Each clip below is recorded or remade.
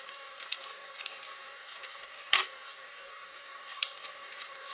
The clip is remade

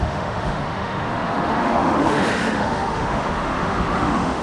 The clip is remade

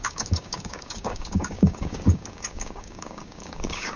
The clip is remade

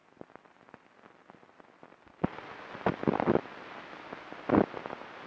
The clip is recorded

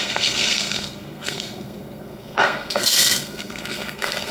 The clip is remade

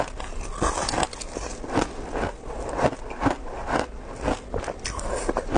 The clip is recorded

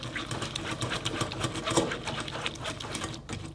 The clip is recorded